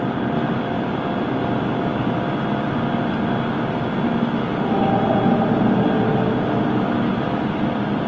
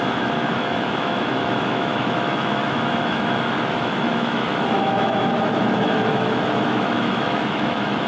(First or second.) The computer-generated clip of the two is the second